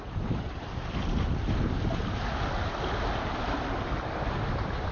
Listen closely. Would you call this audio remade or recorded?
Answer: recorded